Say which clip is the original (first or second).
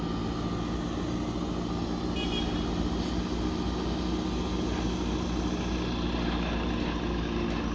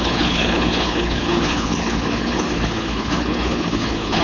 first